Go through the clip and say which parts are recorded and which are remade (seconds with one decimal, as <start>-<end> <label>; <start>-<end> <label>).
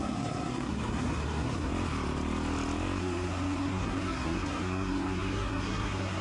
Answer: 0.0-1.7 remade; 1.7-3.0 recorded; 3.0-6.2 remade